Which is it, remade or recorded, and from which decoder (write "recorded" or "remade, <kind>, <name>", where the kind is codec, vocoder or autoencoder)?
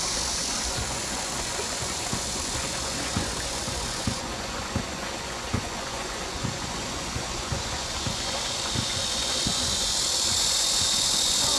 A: remade, vocoder, Vocos